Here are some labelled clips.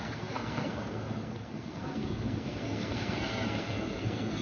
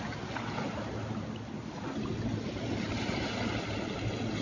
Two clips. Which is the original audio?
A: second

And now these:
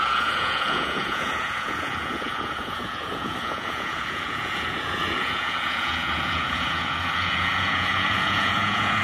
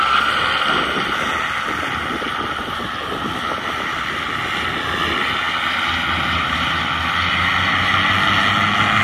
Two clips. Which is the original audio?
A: second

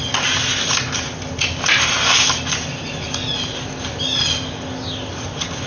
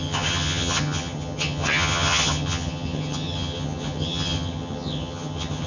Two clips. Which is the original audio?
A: first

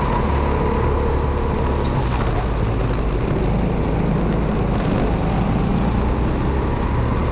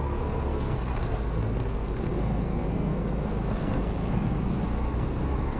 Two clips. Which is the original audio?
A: first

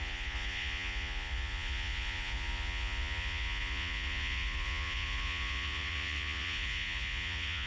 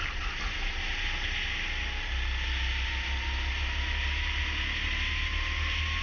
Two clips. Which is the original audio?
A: second